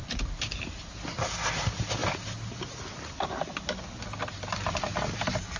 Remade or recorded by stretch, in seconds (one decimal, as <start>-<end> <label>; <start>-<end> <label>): 0.0-5.6 recorded